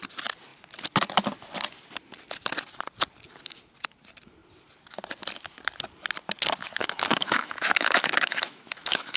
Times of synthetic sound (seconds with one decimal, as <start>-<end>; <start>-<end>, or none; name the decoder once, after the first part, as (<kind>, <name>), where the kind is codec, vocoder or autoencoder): 6.6-9.2 (autoencoder, DAC-VAE)

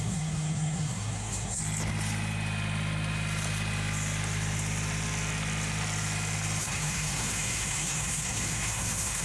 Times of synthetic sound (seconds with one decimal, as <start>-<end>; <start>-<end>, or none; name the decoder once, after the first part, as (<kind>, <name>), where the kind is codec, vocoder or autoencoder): 0.0-1.6 (codec, SNAC); 6.6-9.2

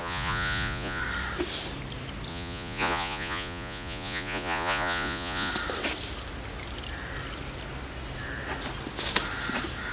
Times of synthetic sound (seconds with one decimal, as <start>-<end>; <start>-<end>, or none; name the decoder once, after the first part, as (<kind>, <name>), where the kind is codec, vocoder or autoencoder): 0.0-1.0 (vocoder, Vocos); 2.3-5.5

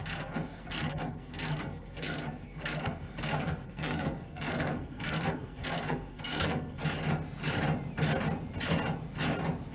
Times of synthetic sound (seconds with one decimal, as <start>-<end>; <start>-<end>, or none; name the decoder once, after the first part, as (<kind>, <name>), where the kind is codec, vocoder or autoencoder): 0.0-6.8 (codec, SNAC)

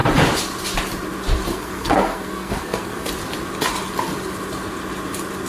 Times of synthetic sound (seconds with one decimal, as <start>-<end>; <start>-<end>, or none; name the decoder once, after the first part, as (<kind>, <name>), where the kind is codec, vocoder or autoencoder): 1.5-3.1 (codec, SNAC)

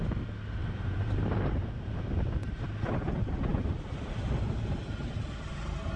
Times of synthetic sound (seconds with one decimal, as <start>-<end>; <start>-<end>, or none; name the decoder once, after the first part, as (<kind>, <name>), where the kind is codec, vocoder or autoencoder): 0.6-2.6 (vocoder, BigVGAN v2)